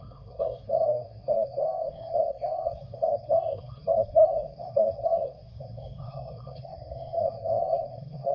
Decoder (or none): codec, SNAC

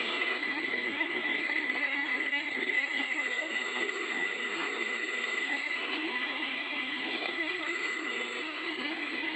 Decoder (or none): codec, SNAC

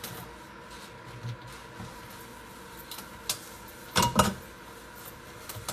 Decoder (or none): none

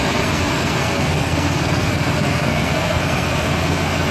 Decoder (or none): codec, SNAC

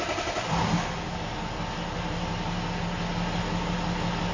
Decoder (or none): none